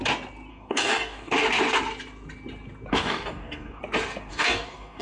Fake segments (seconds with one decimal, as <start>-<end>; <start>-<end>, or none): 0.5-1.3; 2.9-3.8; 4.3-5.0